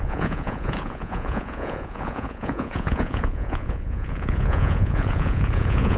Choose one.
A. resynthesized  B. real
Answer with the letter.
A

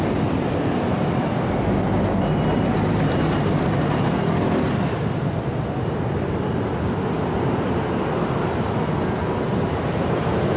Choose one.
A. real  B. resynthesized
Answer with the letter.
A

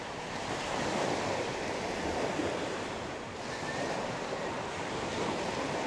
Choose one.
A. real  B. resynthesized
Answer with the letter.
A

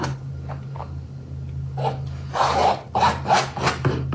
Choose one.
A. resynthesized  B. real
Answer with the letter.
B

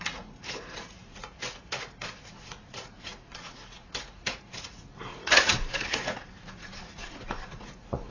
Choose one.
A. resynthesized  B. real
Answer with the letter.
A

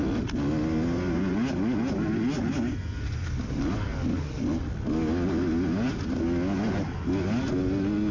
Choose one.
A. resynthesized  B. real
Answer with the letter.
B